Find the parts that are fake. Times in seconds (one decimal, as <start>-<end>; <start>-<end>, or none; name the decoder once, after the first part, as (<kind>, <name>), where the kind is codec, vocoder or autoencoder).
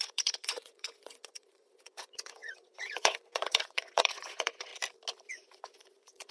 0.0-4.7 (vocoder, Vocos); 5.3-6.3